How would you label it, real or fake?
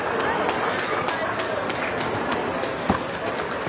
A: real